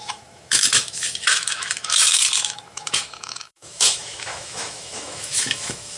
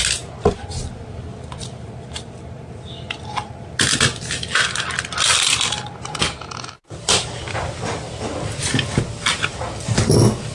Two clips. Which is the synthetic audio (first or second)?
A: first